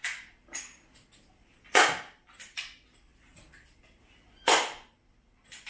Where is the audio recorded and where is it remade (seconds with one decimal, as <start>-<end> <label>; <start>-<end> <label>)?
0.0-5.7 recorded